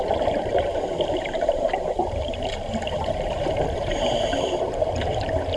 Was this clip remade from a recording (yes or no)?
yes